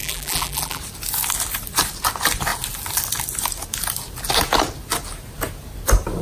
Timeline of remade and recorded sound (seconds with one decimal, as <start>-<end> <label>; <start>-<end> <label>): 0.0-0.8 remade; 0.8-6.2 recorded